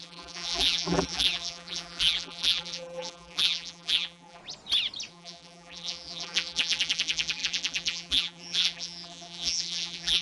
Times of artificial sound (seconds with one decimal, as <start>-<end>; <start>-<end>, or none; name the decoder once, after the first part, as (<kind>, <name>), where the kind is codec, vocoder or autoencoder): 0.0-4.4 (vocoder, BigVGAN v2); 5.1-10.2